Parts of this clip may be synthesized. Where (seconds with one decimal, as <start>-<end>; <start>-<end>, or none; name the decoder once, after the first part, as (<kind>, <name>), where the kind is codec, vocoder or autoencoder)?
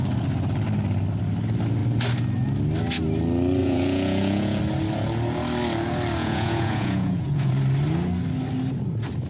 3.6-4.6 (vocoder, Vocos); 6.2-7.5